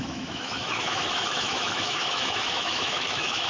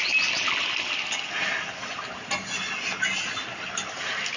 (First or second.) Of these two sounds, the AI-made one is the first